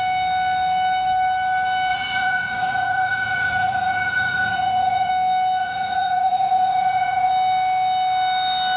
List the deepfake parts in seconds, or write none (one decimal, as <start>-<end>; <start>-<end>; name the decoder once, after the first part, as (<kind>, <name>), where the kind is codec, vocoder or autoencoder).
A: 1.9-5.1 (vocoder, Vocos); 5.6-7.3